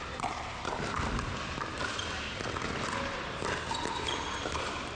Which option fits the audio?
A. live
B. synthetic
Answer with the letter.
A